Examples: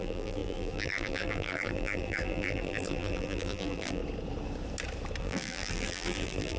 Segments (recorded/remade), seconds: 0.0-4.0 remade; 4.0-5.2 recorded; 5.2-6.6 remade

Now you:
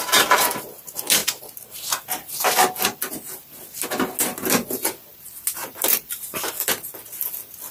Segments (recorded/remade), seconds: 0.0-5.6 recorded; 5.6-6.5 remade; 6.5-7.7 recorded

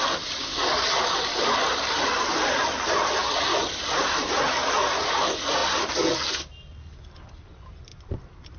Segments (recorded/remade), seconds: 0.0-8.6 recorded

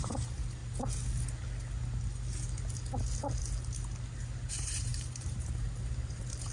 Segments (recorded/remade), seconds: 0.0-0.6 remade; 0.6-4.5 recorded; 4.5-6.5 remade